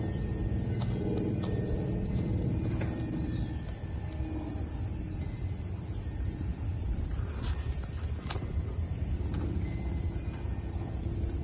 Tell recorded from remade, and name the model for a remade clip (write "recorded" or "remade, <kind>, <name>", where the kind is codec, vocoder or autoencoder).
remade, vocoder, BigVGAN v2